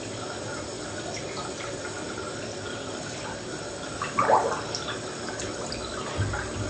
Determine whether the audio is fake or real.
real